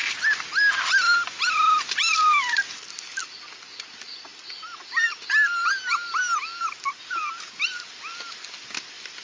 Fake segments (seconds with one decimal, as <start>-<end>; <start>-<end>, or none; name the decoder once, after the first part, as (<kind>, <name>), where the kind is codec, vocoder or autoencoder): none

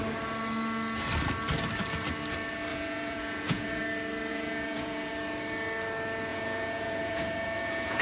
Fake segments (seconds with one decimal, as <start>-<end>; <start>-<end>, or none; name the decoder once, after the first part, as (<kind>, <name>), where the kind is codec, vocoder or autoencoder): 2.7-3.8 (vocoder, Vocos); 4.3-5.1; 6.3-8.0

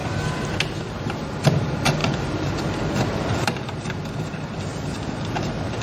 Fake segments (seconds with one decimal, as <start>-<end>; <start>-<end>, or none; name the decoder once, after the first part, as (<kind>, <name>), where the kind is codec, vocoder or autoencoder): 2.0-5.8 (vocoder, BigVGAN v2)

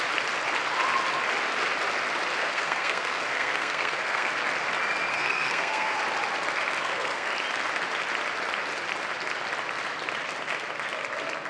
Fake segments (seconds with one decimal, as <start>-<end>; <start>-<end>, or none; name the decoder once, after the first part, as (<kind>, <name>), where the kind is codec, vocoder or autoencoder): 2.4-4.3 (codec, SNAC); 5.1-6.0; 6.8-7.3

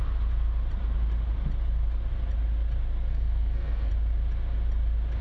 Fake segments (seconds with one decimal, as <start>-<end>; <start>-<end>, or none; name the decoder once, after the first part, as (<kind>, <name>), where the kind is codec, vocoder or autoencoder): 3.1-3.9 (codec, SNAC)

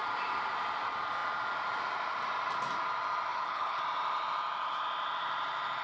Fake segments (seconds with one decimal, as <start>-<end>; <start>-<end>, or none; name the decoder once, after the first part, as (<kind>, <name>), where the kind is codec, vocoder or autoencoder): 3.3-3.8 (codec, HILCodec)